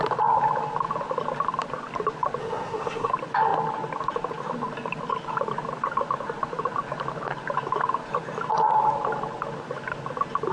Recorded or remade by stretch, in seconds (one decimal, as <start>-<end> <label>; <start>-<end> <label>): 0.0-2.4 recorded; 2.4-3.1 remade; 3.1-10.5 recorded